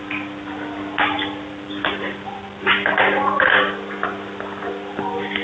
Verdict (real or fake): real